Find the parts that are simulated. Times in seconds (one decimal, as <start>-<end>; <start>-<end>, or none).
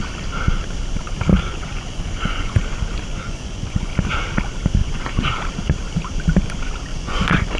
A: 1.3-2.6; 3.1-3.9; 4.8-5.4; 6.9-7.6